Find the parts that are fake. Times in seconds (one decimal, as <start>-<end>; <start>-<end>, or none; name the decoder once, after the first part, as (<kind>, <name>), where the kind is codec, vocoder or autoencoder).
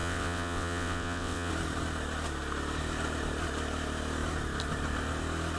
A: 0.0-1.5 (vocoder, WaveNeXt)